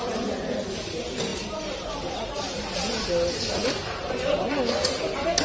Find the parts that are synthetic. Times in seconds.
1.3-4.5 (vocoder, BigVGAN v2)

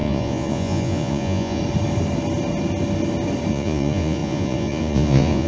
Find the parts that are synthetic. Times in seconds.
0.0-1.6 (vocoder, Vocos); 3.5-5.5